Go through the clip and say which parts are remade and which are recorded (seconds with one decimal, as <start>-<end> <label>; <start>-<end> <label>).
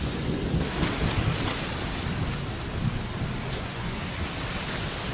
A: 0.0-0.4 remade; 0.4-3.5 recorded; 3.5-4.0 remade; 4.0-5.1 recorded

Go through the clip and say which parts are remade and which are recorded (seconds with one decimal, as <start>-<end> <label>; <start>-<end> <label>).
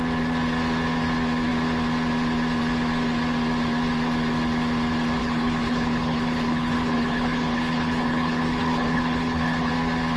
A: 0.0-5.2 recorded; 5.2-9.7 remade; 9.7-10.2 recorded